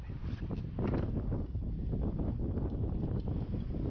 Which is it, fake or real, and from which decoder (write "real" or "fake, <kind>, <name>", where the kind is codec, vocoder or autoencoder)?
real